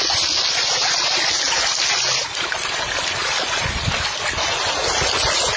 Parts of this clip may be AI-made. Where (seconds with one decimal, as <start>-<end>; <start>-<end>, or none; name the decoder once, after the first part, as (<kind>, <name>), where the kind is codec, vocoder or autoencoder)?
2.2-3.0 (vocoder, BigVGAN v2); 3.6-4.4